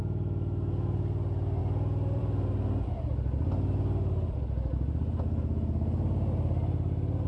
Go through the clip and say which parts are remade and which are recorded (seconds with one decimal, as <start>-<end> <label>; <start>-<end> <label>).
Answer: 0.0-7.3 recorded

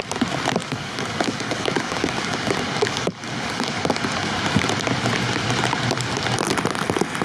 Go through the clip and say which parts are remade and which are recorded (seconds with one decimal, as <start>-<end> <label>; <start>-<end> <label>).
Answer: 0.0-0.6 recorded; 0.6-4.3 remade; 4.3-7.2 recorded

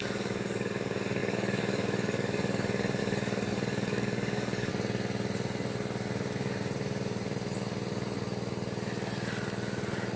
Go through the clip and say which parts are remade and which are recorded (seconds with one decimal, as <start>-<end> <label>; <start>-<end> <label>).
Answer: 0.0-4.7 remade; 4.7-10.2 recorded

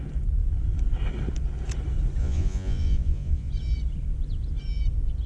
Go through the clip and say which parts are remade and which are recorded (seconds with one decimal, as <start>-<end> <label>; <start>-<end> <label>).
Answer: 0.0-2.2 recorded; 2.2-3.5 remade; 3.5-5.3 recorded

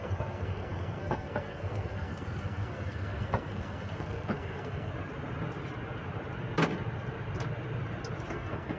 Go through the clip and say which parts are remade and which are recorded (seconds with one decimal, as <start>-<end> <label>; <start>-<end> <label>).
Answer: 0.0-4.9 remade; 4.9-8.3 recorded; 8.3-8.8 remade